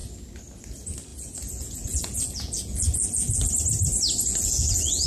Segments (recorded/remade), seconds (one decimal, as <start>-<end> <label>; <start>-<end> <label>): 0.0-1.1 recorded; 1.1-3.5 remade; 3.5-4.3 recorded; 4.3-5.1 remade